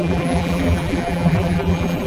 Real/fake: fake